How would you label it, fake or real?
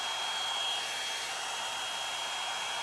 real